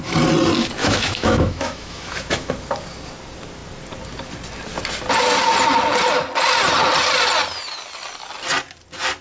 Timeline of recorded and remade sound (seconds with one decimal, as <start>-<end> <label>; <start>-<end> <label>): 0.0-0.8 recorded; 0.8-2.5 remade; 2.5-9.2 recorded